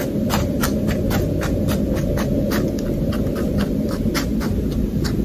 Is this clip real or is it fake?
real